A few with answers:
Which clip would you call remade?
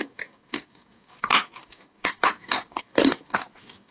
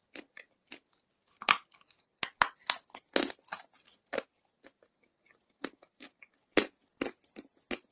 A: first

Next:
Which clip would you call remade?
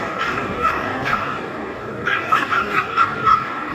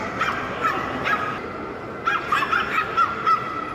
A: first